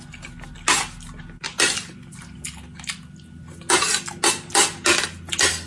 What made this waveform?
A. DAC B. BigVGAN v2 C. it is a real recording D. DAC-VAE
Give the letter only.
C